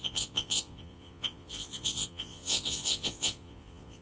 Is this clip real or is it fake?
fake